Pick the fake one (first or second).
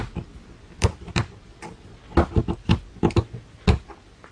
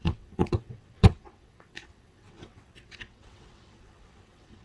second